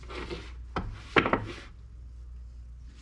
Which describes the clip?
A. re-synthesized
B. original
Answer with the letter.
B